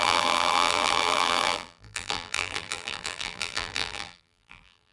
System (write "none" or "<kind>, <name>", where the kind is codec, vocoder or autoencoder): vocoder, BigVGAN v2